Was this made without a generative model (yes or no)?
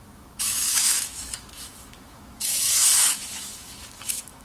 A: no